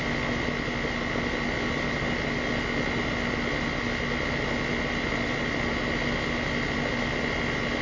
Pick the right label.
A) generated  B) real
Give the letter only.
B